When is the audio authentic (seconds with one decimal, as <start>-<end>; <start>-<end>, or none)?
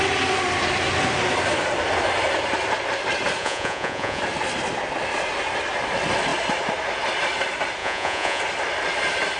0.0-3.4; 4.2-7.8; 8.4-9.4